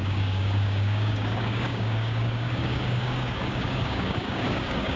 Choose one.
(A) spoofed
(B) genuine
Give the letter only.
A